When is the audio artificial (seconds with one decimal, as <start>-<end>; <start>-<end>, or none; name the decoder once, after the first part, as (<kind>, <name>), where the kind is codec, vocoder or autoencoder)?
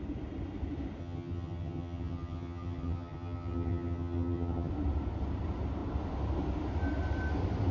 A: 1.0-4.7 (vocoder, HiFi-GAN)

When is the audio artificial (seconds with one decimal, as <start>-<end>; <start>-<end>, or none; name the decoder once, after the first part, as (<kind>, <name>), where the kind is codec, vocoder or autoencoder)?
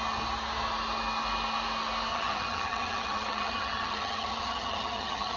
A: 2.1-5.4 (vocoder, HiFi-GAN)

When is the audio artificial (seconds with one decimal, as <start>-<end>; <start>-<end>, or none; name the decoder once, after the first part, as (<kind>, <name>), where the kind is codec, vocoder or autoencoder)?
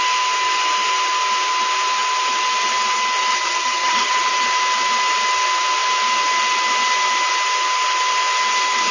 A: 3.3-4.3 (vocoder, HiFi-GAN)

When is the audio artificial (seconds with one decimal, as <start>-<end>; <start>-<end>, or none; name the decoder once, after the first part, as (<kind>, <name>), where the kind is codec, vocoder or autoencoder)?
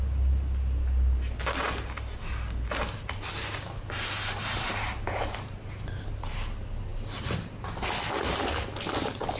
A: none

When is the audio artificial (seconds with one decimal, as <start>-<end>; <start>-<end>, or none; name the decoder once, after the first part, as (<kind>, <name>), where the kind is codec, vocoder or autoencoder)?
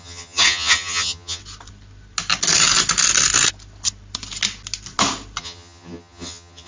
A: 0.0-1.4 (vocoder, HiFi-GAN); 5.4-6.7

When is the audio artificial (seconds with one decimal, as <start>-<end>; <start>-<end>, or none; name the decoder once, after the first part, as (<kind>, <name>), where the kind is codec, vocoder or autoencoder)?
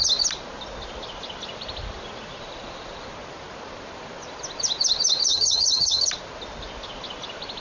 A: 5.3-6.1 (vocoder, HiFi-GAN)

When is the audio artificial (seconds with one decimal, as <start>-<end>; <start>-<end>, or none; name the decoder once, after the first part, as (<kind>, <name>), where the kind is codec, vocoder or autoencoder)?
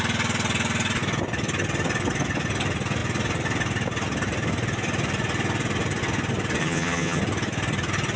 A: 6.6-7.2 (vocoder, HiFi-GAN)